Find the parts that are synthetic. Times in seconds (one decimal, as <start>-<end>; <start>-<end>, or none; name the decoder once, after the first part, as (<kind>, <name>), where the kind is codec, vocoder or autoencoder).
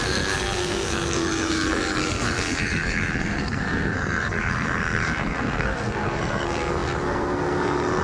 0.0-8.0 (codec, SNAC)